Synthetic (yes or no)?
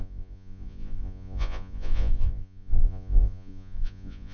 yes